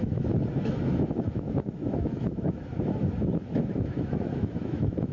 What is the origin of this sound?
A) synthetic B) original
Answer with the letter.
A